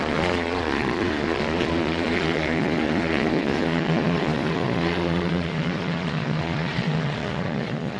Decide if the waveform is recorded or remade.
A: remade